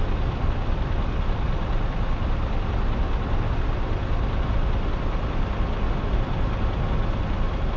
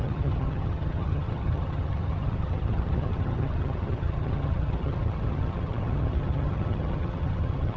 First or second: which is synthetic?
second